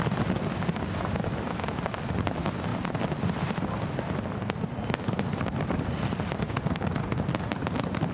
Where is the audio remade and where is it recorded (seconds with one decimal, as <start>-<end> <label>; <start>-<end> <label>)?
0.0-1.1 recorded; 1.1-1.7 remade; 1.7-2.7 recorded; 2.7-6.8 remade; 6.8-8.1 recorded